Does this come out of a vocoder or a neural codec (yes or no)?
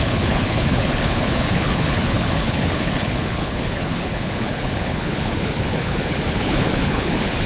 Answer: yes